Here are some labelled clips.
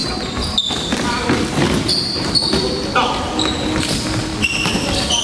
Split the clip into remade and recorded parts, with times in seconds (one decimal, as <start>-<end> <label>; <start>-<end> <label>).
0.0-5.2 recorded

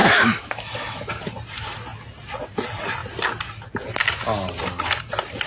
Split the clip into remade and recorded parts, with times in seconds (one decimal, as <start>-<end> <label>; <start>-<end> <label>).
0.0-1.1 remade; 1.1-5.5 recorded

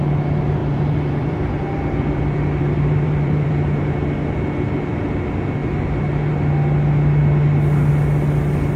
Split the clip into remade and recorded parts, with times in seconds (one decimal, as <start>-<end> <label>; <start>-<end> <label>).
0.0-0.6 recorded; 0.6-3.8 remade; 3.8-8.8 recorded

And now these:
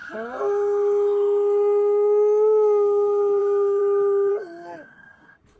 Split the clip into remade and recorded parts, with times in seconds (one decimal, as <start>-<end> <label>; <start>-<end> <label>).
0.0-3.8 remade; 3.8-4.3 recorded; 4.3-5.6 remade

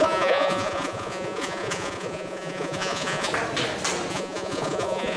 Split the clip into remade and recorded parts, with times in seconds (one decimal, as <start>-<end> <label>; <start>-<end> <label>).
0.0-3.3 remade; 3.3-4.1 recorded; 4.1-5.2 remade

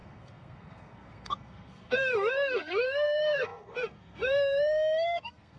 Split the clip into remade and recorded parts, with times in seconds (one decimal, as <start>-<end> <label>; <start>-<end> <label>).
0.0-5.6 remade

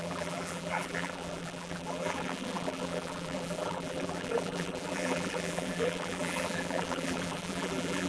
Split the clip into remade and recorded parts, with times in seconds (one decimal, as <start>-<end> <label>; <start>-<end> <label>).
0.0-8.1 remade